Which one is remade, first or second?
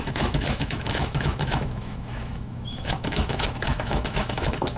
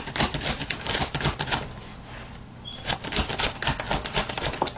first